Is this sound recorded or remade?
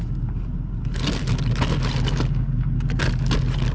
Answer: recorded